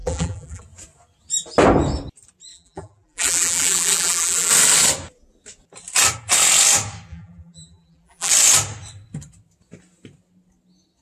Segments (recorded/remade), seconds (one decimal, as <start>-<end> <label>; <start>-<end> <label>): 0.0-0.6 remade; 0.6-2.5 recorded; 2.5-4.5 remade; 4.5-7.1 recorded; 7.1-8.3 remade; 8.3-11.0 recorded

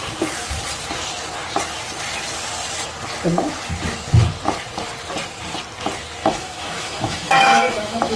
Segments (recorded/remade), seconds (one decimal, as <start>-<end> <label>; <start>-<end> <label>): 0.0-6.2 recorded; 6.2-8.2 remade